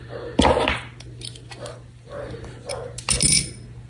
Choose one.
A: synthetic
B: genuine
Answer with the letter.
B